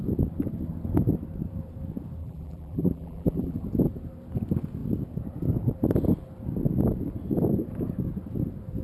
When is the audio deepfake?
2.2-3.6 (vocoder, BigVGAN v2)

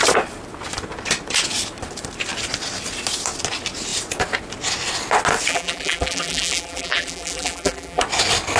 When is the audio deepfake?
5.5-8.0 (vocoder, BigVGAN v2)

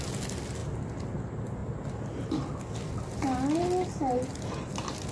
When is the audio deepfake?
none

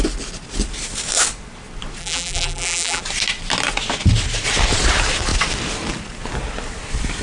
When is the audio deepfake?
2.0-3.0 (vocoder, BigVGAN v2)

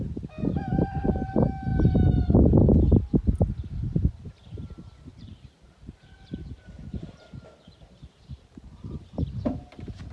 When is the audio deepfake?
3.6-4.2 (vocoder, BigVGAN v2); 5.1-9.3